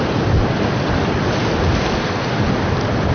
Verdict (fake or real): real